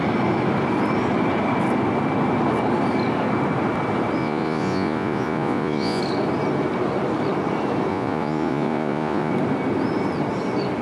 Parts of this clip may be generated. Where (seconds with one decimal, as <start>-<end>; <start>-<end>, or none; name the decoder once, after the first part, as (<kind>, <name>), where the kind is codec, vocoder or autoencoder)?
4.2-6.0 (vocoder, Vocos); 7.9-9.3

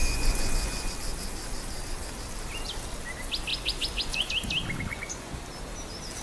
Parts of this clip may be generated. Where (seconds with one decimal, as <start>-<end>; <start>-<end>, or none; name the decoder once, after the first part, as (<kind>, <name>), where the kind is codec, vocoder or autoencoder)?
0.0-0.9 (vocoder, Vocos); 3.5-4.3; 4.9-5.4

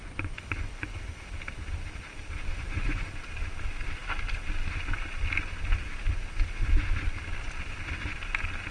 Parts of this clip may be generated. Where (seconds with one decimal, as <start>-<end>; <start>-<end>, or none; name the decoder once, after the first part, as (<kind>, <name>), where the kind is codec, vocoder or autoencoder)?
0.0-1.1 (vocoder, Vocos); 2.5-3.1

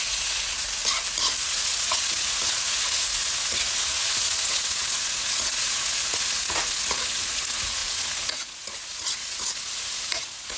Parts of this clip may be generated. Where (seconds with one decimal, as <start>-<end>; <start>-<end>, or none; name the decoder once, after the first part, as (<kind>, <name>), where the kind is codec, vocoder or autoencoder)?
0.0-0.8 (vocoder, Vocos); 1.4-10.6